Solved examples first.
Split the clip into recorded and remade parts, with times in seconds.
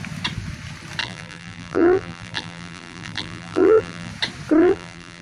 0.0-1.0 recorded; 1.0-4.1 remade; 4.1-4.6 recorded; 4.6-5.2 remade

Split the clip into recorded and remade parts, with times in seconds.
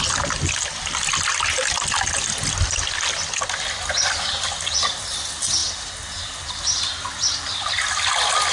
0.0-8.5 recorded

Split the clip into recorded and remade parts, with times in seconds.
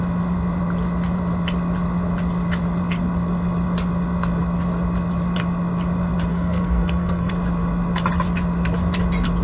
0.0-6.3 recorded; 6.3-7.3 remade; 7.3-9.4 recorded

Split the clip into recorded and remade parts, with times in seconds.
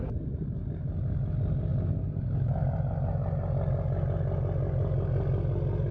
0.0-5.9 recorded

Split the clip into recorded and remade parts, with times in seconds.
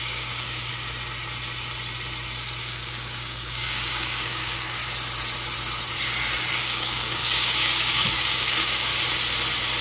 0.0-0.7 remade; 0.7-2.6 recorded; 2.6-4.8 remade; 4.8-6.6 recorded; 6.6-8.9 remade; 8.9-9.8 recorded